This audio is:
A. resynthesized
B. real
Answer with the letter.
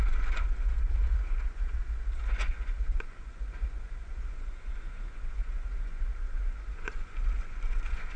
A